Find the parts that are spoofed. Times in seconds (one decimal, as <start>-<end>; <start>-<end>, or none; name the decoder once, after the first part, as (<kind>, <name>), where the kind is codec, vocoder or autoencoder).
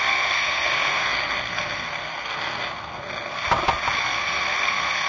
0.0-3.3 (codec, SNAC); 4.0-5.1